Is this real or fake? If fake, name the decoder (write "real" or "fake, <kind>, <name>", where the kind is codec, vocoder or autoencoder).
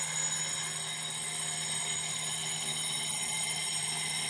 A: real